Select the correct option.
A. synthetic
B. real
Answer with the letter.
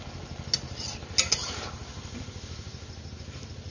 B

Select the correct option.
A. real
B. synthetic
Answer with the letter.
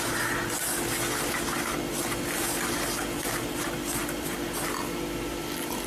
A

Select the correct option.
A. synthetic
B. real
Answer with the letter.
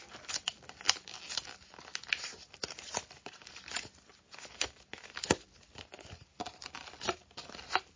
B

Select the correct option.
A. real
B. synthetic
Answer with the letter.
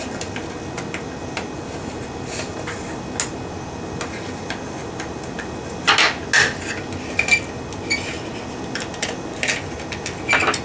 A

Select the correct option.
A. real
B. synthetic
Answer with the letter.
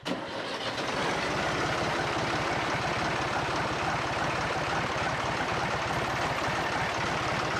A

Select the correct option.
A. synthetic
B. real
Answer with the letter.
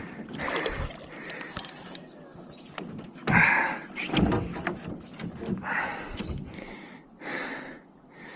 B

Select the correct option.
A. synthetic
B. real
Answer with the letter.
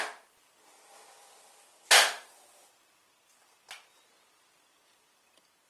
B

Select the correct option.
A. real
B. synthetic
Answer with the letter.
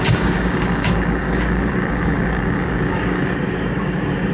B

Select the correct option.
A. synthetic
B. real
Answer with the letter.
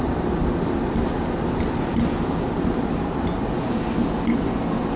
B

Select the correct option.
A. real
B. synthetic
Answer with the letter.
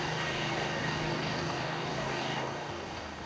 B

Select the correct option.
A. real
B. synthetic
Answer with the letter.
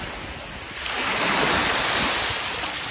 A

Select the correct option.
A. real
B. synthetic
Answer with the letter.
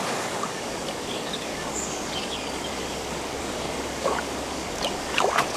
B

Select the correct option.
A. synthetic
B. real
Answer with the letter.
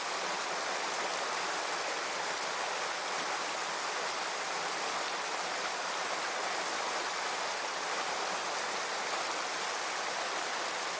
B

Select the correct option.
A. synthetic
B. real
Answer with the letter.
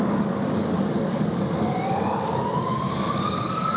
A